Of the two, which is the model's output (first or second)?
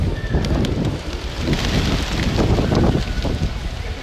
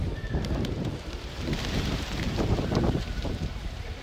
second